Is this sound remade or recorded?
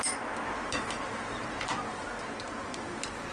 recorded